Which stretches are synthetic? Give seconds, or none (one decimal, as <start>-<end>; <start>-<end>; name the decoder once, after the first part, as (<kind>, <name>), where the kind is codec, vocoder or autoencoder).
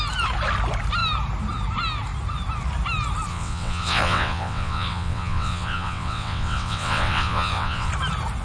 3.3-7.9 (vocoder, WaveNeXt)